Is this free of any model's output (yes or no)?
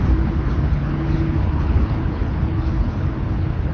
no